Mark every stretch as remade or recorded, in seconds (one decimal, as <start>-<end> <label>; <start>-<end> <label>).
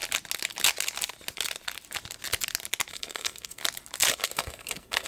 0.0-2.9 recorded; 2.9-3.6 remade; 3.6-4.1 recorded; 4.1-5.1 remade